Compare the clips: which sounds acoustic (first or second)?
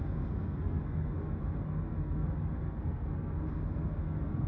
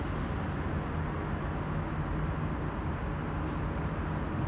second